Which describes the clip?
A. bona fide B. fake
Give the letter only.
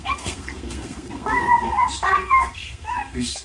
B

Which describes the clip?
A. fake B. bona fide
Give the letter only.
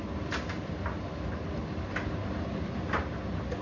B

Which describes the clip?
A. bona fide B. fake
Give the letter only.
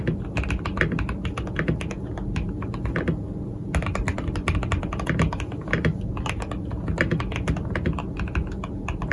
A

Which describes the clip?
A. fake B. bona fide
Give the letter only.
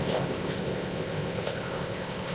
A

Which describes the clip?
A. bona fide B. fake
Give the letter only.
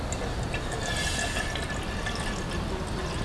A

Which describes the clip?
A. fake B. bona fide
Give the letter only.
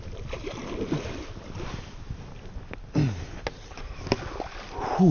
B